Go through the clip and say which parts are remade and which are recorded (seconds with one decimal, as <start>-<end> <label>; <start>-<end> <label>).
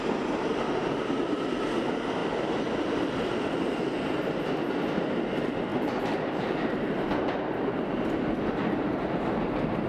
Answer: 0.0-5.7 recorded; 5.7-7.8 remade; 7.8-8.6 recorded; 8.6-9.9 remade